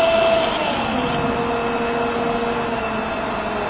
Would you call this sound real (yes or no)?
yes